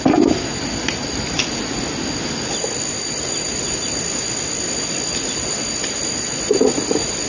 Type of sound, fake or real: real